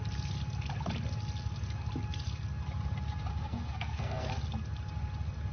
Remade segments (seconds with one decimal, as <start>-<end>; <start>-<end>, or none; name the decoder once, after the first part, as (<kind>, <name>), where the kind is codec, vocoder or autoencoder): 3.3-4.3 (codec, SNAC)

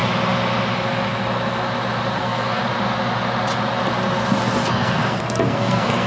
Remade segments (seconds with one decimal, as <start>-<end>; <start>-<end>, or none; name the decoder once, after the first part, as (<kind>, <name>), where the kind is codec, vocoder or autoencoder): 2.2-2.6 (codec, SNAC); 4.7-6.1